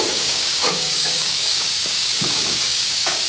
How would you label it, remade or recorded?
remade